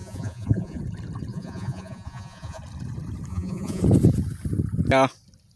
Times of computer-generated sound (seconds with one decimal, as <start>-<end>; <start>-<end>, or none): 0.0-0.8; 1.3-2.6; 3.3-3.8

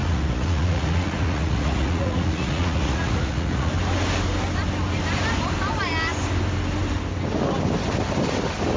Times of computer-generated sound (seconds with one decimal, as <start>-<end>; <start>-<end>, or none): 0.0-3.7